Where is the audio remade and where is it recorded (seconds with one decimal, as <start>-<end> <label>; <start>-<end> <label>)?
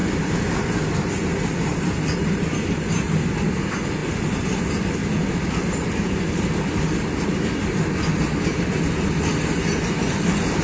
0.0-10.6 recorded